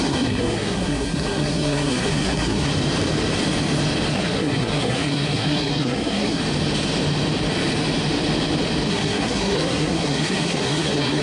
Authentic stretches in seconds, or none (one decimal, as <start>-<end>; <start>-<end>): 2.7-4.1; 6.4-8.9